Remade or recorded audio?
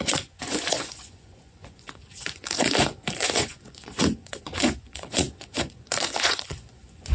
remade